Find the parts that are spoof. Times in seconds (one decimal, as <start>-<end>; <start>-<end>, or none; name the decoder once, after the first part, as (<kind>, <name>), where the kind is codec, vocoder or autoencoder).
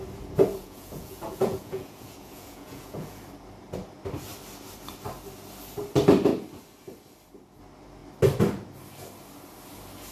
0.6-3.2 (vocoder, Vocos)